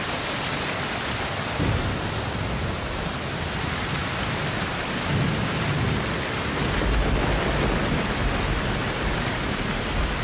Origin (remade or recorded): recorded